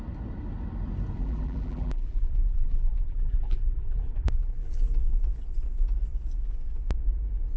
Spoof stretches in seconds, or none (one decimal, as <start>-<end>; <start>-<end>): 1.2-4.8